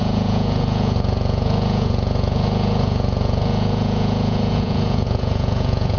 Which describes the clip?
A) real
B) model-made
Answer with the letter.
B